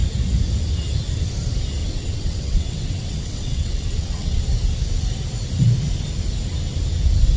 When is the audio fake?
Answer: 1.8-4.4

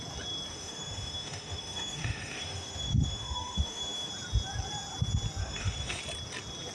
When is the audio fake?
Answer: 0.5-4.1; 5.4-6.0

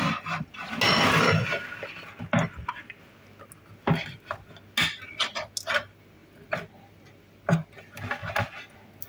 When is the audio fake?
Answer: none

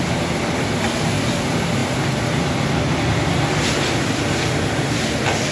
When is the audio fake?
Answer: none

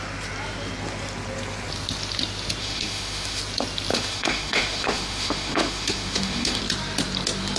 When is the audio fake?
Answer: 2.6-3.4; 3.9-6.6

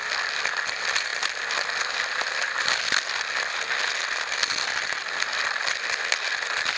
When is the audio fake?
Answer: 1.1-3.5